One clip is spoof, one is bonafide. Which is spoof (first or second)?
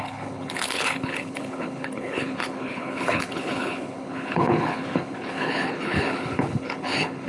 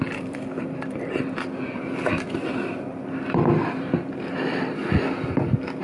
first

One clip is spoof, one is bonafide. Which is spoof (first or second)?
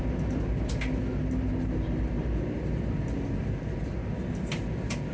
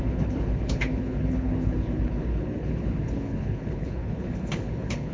second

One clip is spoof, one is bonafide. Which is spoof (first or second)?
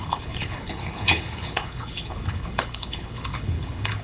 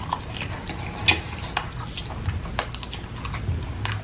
first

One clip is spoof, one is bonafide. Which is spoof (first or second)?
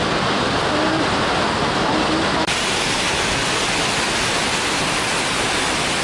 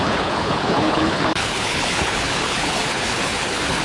second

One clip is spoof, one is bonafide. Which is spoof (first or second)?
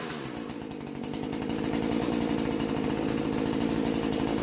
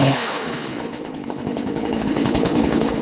second